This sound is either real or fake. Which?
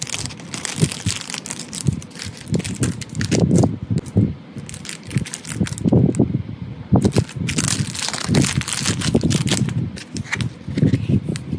real